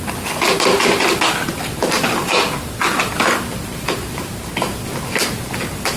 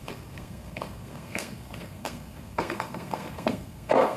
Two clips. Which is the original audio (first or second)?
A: first